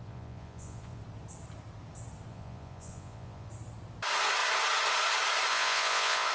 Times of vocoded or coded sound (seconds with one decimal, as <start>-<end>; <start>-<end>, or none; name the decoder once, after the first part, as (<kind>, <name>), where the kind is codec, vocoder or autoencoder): 0.0-1.0 (vocoder, Vocos); 2.3-3.5; 5.5-6.3